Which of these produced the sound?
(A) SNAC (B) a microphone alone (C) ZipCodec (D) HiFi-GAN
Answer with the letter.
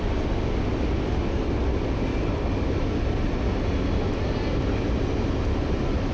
B